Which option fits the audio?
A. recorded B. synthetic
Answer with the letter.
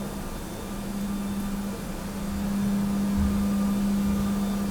A